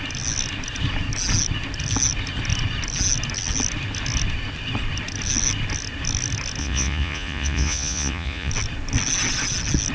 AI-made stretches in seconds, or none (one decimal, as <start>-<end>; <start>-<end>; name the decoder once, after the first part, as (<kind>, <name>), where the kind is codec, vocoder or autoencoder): 6.6-8.5 (vocoder, Vocos)